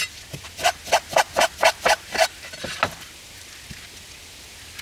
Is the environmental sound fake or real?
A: real